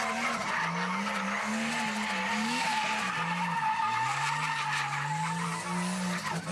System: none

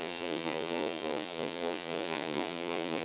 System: vocoder, Vocos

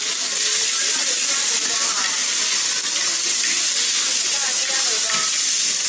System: none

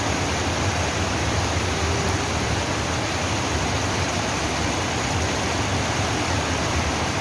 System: none